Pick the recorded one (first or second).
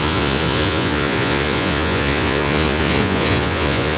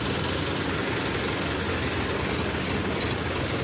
second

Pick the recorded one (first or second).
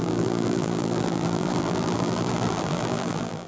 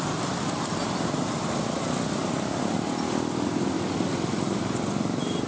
second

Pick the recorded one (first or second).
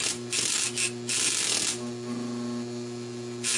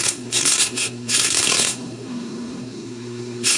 first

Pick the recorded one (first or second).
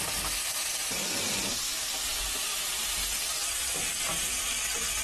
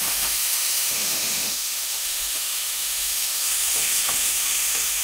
first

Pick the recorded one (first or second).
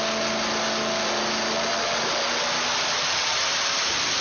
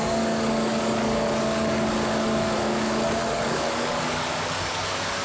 first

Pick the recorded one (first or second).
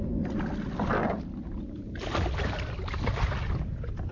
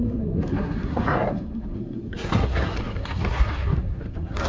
first